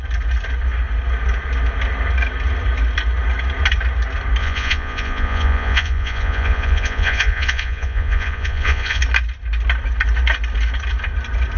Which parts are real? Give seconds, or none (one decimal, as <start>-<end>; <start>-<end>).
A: 0.0-4.4; 9.0-11.6